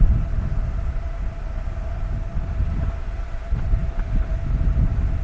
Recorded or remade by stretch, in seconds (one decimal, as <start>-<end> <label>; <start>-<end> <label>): 0.0-5.2 recorded